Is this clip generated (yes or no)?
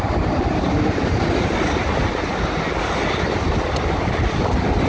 no